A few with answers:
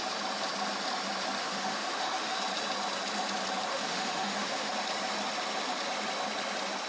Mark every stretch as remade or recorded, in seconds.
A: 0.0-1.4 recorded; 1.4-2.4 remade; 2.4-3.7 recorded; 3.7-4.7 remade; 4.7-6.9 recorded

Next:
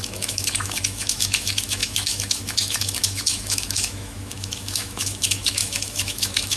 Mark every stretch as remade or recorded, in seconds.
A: 0.0-6.6 remade